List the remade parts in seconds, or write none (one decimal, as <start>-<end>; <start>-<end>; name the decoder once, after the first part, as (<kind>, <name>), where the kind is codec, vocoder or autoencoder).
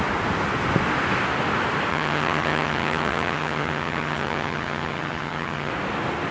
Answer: 1.9-5.7 (vocoder, HiFi-GAN)